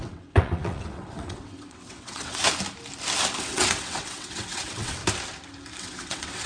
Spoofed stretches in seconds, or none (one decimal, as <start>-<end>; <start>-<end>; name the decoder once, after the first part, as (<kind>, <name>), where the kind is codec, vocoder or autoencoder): 0.0-2.4 (vocoder, WaveNeXt); 3.4-5.0; 5.8-6.5